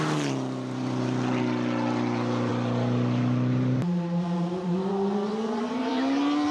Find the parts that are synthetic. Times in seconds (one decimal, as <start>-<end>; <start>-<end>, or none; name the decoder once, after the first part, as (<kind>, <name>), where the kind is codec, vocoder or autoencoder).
0.0-6.5 (vocoder, BigVGAN v2)